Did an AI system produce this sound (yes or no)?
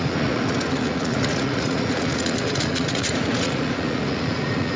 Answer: yes